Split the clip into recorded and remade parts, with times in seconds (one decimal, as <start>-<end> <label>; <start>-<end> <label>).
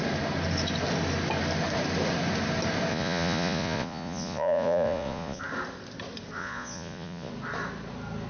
0.0-2.9 recorded; 2.9-5.4 remade; 5.4-6.4 recorded; 6.4-7.3 remade; 7.3-8.3 recorded